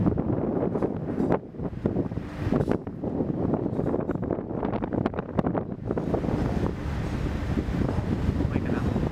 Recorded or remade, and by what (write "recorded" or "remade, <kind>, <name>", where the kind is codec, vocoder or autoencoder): recorded